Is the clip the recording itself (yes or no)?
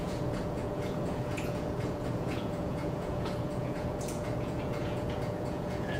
no